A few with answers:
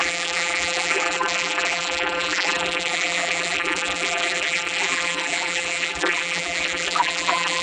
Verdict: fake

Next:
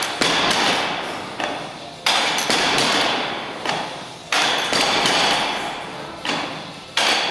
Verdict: fake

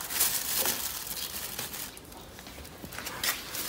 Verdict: real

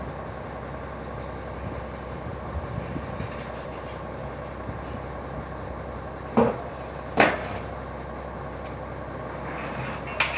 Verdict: real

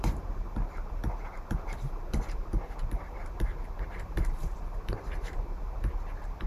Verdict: fake